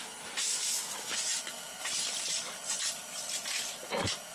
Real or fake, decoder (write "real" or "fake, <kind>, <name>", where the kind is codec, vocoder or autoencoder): real